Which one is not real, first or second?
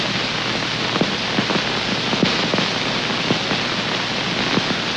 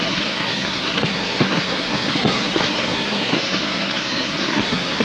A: second